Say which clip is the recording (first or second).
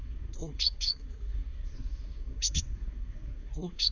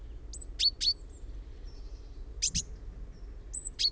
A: second